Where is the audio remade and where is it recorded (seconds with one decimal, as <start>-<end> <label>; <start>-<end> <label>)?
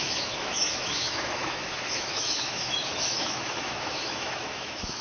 0.0-5.0 remade